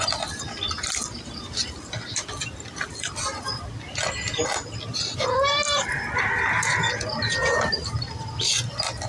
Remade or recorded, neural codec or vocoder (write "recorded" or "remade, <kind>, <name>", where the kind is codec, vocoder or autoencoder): recorded